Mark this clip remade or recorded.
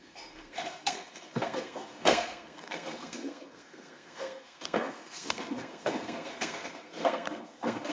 remade